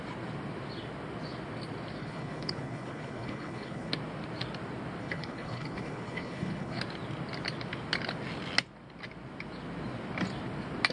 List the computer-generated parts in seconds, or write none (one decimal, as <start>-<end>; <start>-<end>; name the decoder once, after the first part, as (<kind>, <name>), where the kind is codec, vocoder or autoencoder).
2.0-3.9 (codec, HILCodec); 5.0-6.8